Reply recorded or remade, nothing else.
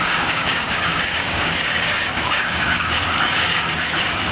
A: remade